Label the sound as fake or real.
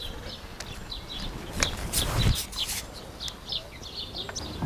real